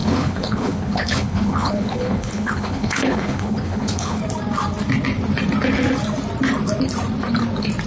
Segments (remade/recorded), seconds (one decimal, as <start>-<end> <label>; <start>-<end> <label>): 0.0-4.2 remade; 4.2-7.9 recorded